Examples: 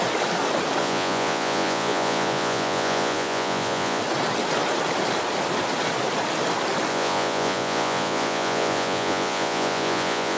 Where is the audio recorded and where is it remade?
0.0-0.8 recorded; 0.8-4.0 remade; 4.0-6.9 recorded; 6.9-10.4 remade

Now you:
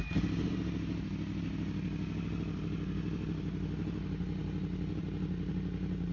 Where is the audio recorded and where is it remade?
0.0-6.1 recorded

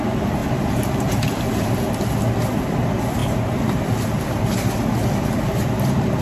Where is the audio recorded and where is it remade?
0.0-0.4 recorded; 0.4-1.7 remade; 1.7-3.2 recorded; 3.2-4.7 remade; 4.7-6.2 recorded